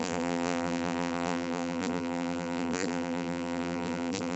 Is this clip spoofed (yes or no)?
yes